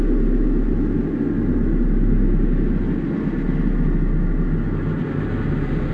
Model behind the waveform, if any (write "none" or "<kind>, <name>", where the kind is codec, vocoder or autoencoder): none